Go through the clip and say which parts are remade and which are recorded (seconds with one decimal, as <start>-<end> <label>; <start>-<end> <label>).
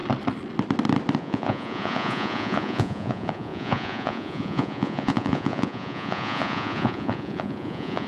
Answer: 0.0-1.2 recorded; 1.2-8.1 remade